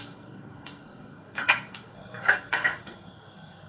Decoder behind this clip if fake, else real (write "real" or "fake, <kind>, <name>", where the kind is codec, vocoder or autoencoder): fake, codec, SNAC